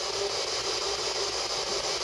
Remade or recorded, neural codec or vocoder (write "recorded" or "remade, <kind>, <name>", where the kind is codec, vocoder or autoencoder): recorded